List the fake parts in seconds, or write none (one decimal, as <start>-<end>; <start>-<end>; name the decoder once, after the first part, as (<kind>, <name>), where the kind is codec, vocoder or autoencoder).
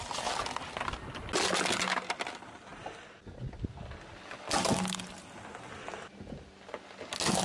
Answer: none